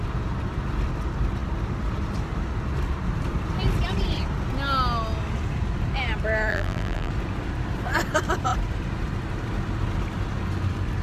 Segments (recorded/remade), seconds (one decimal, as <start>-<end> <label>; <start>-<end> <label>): 0.0-6.5 recorded; 6.5-7.1 remade; 7.1-11.0 recorded